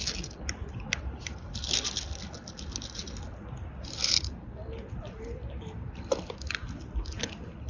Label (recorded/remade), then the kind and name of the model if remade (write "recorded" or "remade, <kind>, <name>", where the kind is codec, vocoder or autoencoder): recorded